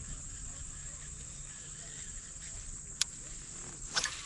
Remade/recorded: recorded